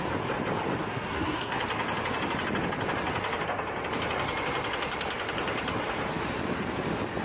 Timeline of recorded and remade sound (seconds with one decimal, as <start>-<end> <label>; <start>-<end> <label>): 0.0-0.9 recorded; 0.9-1.6 remade; 1.6-7.2 recorded